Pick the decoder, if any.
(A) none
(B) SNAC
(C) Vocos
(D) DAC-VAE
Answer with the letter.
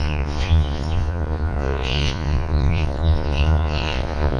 C